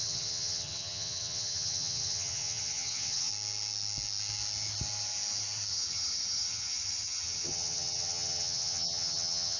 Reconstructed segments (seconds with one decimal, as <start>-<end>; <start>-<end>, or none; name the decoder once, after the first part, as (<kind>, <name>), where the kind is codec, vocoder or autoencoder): 0.0-3.3 (vocoder, HiFi-GAN); 5.7-9.6